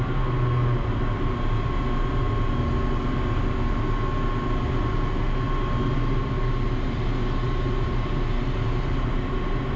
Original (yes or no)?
yes